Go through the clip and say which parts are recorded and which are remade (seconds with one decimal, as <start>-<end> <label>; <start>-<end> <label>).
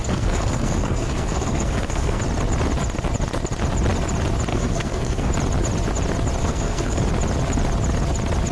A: 0.0-2.2 remade; 2.2-4.5 recorded; 4.5-5.3 remade; 5.3-6.4 recorded; 6.4-7.0 remade; 7.0-8.5 recorded